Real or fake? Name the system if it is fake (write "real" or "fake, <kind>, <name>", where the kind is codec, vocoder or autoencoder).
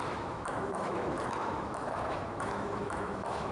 fake, autoencoder, DAC-VAE